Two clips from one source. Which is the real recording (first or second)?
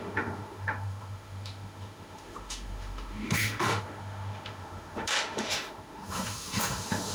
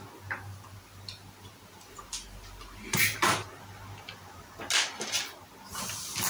second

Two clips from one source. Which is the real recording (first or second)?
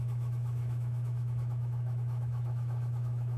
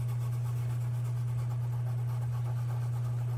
second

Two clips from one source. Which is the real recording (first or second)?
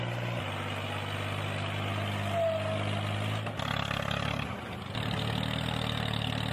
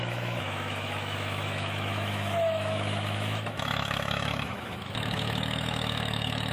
first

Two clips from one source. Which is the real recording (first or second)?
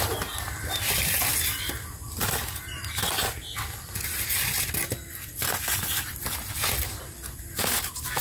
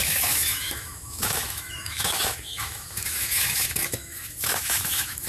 first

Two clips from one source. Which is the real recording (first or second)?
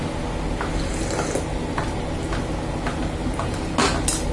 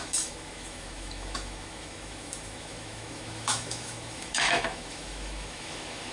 first